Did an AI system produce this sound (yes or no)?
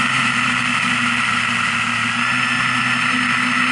no